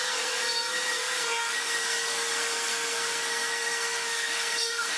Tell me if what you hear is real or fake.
fake